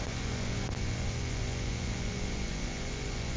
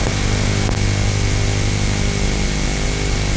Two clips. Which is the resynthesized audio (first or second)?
first